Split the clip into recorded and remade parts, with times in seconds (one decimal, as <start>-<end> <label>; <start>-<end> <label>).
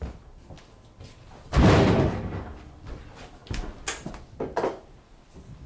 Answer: 0.0-5.7 recorded